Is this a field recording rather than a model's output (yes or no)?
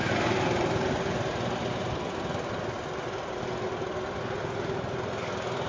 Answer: yes